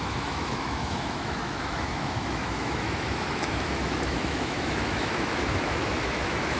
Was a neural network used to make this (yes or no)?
yes